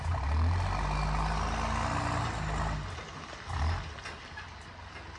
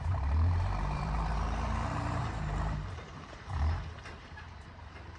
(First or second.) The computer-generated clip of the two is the second